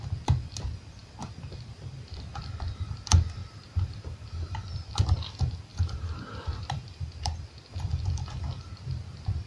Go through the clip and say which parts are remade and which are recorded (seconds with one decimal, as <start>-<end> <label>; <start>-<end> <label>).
0.0-3.4 recorded; 3.4-4.6 remade; 4.6-5.7 recorded; 5.7-7.4 remade; 7.4-9.5 recorded